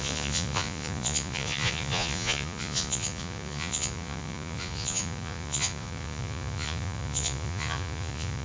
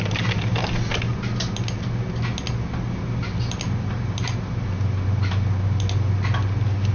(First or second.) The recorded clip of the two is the second